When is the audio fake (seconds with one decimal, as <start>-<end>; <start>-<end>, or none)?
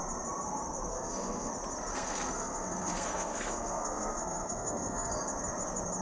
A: 0.9-1.5; 1.9-5.1